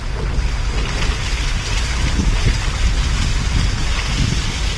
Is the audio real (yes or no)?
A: yes